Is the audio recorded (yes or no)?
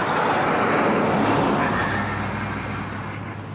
yes